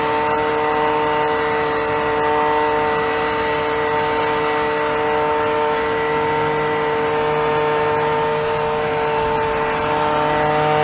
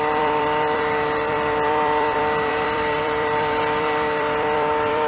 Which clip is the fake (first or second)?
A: second